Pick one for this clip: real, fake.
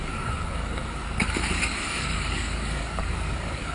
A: fake